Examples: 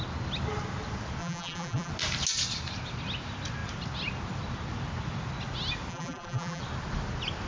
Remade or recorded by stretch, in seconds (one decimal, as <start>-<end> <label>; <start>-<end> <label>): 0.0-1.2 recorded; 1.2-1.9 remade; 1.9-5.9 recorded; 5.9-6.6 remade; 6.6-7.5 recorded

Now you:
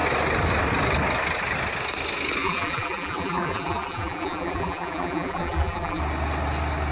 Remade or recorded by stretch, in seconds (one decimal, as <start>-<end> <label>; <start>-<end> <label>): 0.0-2.4 recorded; 2.4-6.0 remade; 6.0-6.9 recorded

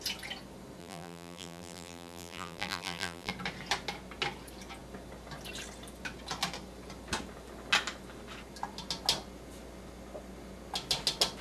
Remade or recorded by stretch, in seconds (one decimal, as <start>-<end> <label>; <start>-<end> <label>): 0.0-0.8 recorded; 0.8-3.3 remade; 3.3-11.4 recorded

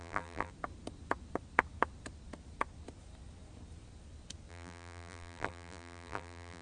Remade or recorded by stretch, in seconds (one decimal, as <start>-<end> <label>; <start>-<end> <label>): 0.0-0.5 remade; 0.5-4.5 recorded; 4.5-6.6 remade

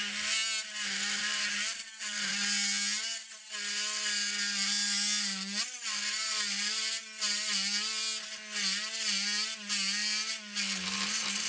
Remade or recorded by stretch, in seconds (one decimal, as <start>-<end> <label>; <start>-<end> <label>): 0.0-1.2 recorded; 1.2-2.3 remade; 2.3-11.5 recorded

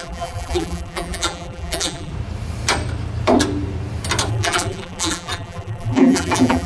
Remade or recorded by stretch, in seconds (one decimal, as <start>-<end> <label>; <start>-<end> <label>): 0.0-2.1 remade; 2.1-4.3 recorded; 4.3-6.7 remade